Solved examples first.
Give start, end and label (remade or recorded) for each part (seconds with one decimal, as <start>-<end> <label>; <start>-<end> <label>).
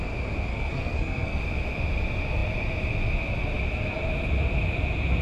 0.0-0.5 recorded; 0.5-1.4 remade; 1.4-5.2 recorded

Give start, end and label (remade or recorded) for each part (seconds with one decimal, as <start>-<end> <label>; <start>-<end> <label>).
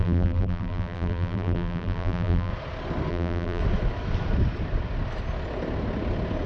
0.0-2.5 remade; 2.5-3.1 recorded; 3.1-3.6 remade; 3.6-6.5 recorded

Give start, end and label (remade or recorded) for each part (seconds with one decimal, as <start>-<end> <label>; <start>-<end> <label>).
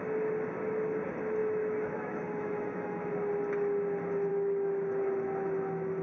0.0-1.4 recorded; 1.4-3.1 remade; 3.1-4.3 recorded; 4.3-5.0 remade; 5.0-6.0 recorded